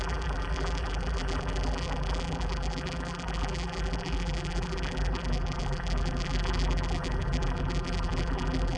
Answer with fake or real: fake